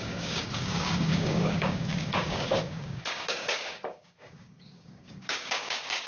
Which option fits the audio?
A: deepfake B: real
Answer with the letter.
A